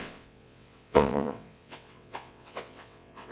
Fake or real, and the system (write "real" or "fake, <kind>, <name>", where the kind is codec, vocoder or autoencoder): fake, vocoder, WaveNeXt